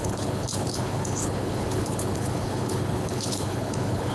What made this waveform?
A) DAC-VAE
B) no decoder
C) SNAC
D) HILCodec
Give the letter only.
D